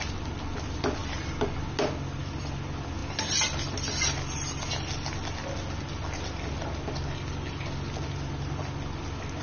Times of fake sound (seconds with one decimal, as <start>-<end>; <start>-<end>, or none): none